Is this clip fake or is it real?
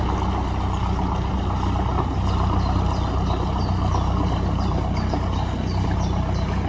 real